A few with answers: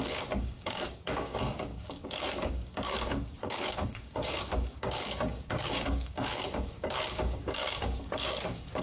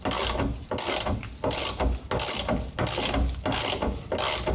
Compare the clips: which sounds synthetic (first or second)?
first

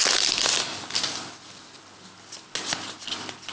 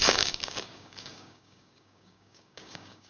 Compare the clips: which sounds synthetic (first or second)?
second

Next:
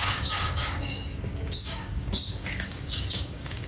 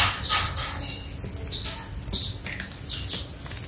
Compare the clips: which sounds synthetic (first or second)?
first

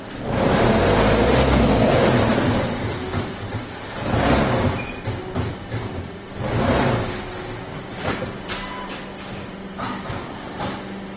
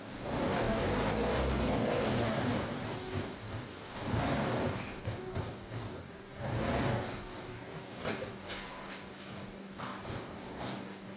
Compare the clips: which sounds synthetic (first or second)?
second